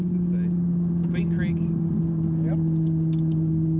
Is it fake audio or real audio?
real